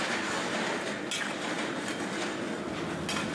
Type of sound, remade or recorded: recorded